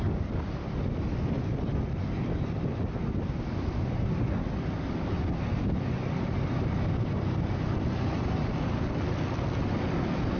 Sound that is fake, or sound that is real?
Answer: real